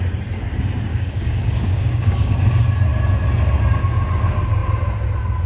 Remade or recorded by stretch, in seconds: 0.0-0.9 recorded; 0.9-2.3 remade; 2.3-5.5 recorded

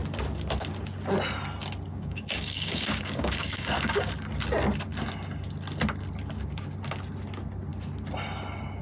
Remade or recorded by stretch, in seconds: 0.0-1.9 recorded; 1.9-4.1 remade; 4.1-8.8 recorded

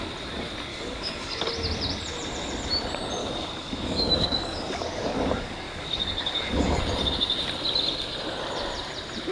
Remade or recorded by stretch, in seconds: 0.0-0.7 recorded; 0.7-1.5 remade; 1.5-3.2 recorded; 3.2-6.8 remade; 6.8-9.3 recorded

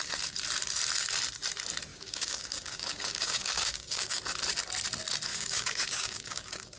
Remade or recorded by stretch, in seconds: 0.0-1.9 recorded; 1.9-4.2 remade; 4.2-5.3 recorded; 5.3-6.8 remade

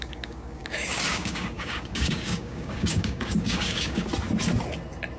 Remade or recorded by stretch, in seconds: 0.0-4.1 remade; 4.1-5.2 recorded

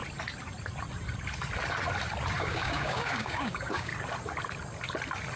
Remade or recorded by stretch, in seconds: 0.0-2.4 recorded; 2.4-3.9 remade; 3.9-5.4 recorded

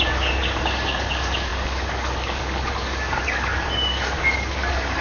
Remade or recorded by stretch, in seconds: 0.0-5.0 remade

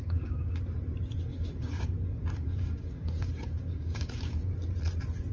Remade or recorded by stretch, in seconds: 0.0-0.5 remade; 0.5-1.3 recorded; 1.3-4.5 remade; 4.5-5.3 recorded